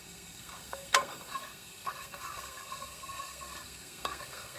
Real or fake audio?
fake